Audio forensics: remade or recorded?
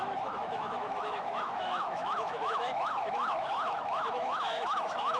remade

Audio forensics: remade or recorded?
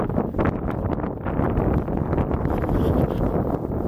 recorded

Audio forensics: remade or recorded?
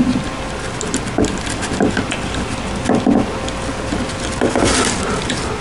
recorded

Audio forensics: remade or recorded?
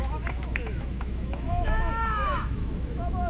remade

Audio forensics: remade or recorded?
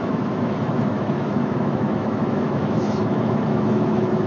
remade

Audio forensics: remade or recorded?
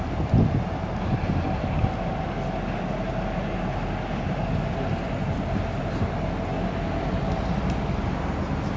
recorded